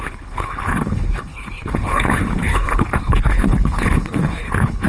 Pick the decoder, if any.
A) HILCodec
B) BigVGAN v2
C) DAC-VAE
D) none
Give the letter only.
A